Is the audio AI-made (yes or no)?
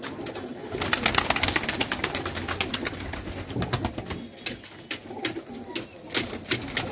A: no